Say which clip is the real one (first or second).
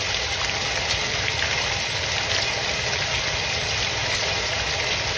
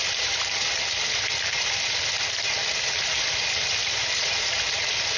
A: first